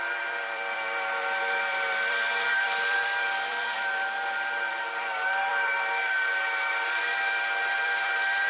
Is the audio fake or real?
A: fake